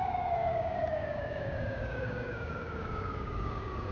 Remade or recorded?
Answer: remade